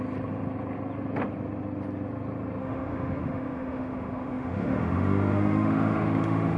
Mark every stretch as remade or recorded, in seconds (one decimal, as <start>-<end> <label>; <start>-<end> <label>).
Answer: 0.0-2.6 recorded; 2.6-6.6 remade